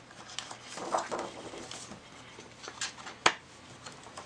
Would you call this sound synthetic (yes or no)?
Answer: no